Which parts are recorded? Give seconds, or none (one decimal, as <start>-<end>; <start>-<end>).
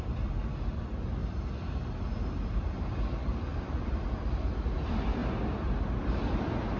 0.0-6.8